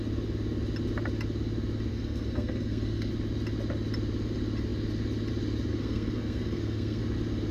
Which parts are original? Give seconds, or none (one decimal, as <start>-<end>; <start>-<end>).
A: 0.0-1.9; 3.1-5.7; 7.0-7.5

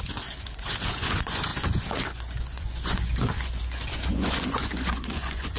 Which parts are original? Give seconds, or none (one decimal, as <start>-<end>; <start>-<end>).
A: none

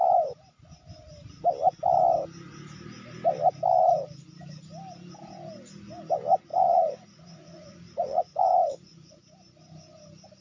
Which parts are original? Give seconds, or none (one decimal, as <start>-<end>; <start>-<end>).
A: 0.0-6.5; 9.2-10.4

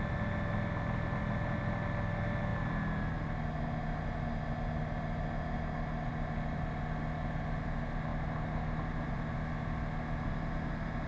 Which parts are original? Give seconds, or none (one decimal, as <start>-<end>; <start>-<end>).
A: 0.0-11.1

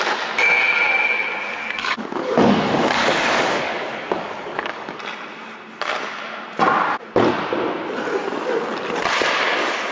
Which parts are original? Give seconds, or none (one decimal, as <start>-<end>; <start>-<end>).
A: 0.0-1.5; 5.0-9.9